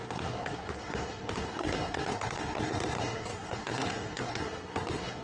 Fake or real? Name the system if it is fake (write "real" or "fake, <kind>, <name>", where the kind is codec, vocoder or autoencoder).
fake, codec, SNAC